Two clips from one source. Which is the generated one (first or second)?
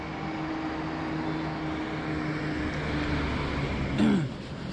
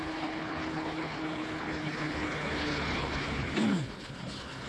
second